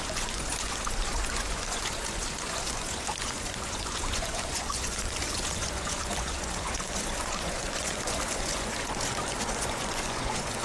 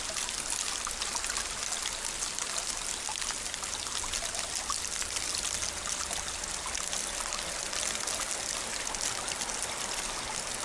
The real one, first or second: second